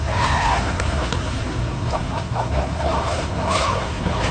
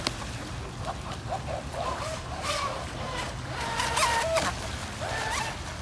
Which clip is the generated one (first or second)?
first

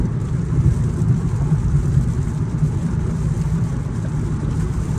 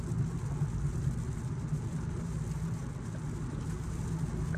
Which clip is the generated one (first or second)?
first